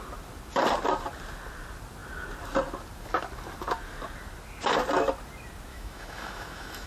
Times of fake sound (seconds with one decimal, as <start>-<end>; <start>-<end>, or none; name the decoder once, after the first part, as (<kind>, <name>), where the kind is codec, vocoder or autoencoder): 5.7-6.9 (autoencoder, DAC-VAE)